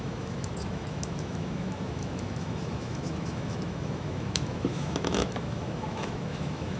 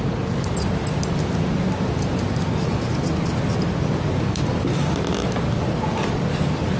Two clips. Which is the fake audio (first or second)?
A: first